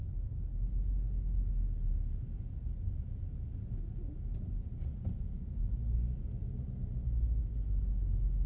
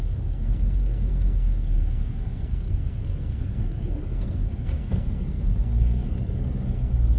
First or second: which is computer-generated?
second